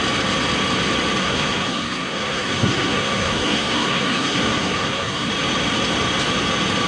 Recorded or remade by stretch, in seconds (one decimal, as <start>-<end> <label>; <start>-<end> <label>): 0.0-1.2 recorded; 1.2-5.3 remade; 5.3-6.9 recorded